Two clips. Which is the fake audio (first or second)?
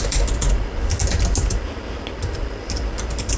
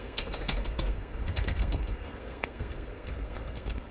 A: second